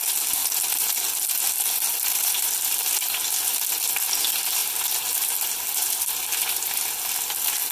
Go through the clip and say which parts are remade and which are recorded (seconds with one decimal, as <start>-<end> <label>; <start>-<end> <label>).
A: 0.0-7.7 recorded